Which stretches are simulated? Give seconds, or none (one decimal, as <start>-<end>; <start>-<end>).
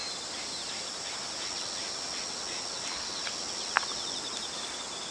none